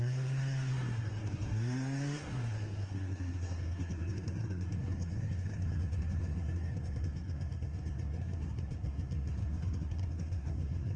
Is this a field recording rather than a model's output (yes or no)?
no